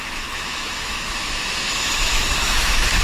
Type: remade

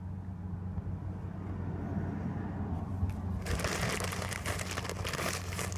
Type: recorded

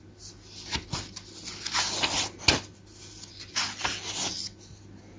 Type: recorded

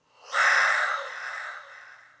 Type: recorded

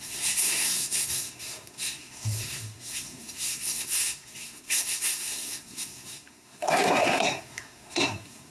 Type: remade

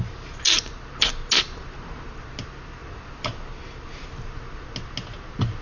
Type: recorded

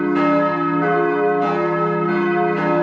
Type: recorded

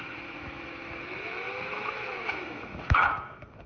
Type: remade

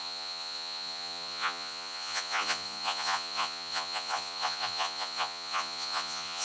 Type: remade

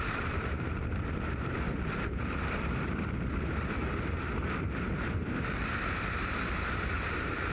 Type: remade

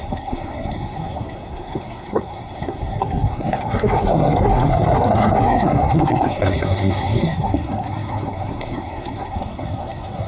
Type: remade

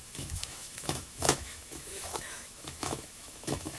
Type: remade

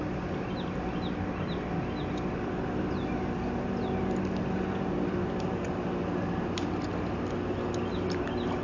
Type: recorded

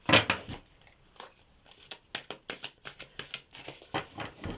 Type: recorded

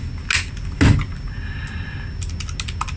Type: recorded